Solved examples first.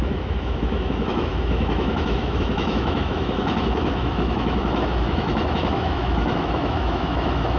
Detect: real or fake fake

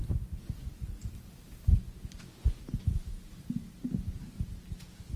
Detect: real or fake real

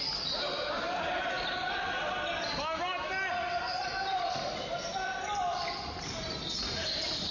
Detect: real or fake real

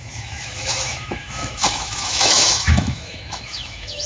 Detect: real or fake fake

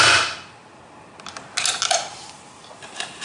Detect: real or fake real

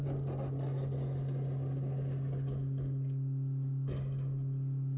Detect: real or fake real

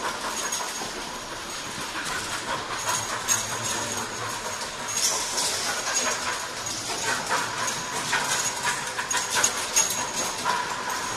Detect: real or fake real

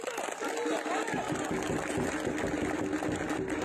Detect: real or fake real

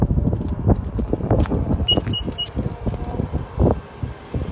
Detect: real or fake real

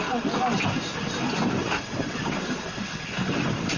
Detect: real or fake real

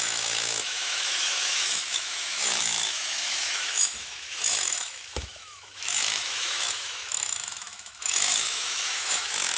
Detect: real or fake fake